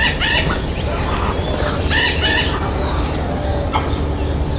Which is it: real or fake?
real